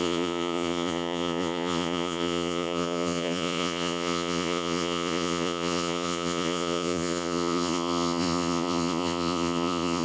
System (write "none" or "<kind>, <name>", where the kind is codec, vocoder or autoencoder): vocoder, Vocos